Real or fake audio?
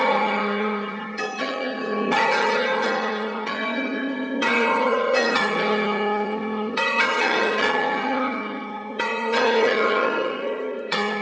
fake